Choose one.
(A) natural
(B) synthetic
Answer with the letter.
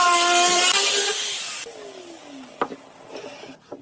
A